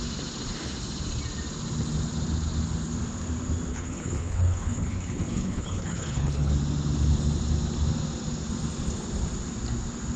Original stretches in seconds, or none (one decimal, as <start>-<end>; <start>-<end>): 0.0-3.7; 6.5-10.2